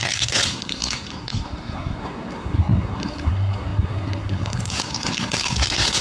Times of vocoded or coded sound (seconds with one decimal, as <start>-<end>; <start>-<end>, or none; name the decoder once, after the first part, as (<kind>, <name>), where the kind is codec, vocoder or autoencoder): 0.0-6.0 (codec, SNAC)

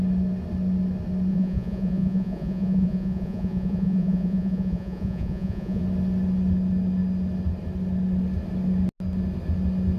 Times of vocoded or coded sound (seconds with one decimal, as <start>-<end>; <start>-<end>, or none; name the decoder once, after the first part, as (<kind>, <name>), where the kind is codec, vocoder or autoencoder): 1.3-5.8 (vocoder, Vocos)

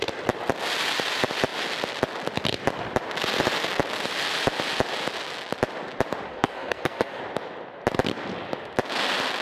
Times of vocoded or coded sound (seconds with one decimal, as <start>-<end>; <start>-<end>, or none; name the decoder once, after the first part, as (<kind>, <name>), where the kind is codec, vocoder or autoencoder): 6.3-7.2 (codec, SNAC)

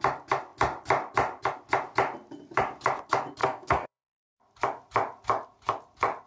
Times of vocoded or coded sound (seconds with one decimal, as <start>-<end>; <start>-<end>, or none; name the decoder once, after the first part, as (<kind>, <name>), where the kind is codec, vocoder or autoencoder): 3.4-4.3 (codec, SNAC)

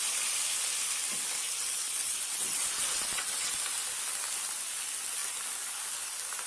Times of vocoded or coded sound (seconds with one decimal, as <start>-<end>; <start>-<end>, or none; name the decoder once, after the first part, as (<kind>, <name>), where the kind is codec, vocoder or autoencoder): 1.5-3.5 (vocoder, WaveNeXt)

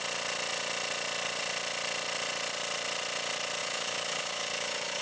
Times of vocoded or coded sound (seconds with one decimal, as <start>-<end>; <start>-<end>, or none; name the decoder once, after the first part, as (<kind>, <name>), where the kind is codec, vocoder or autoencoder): 3.6-5.0 (autoencoder, DAC-VAE)